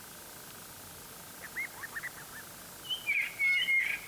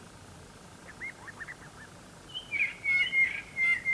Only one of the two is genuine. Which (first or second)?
first